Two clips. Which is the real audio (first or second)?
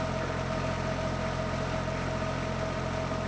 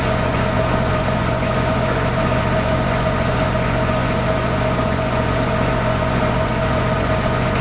first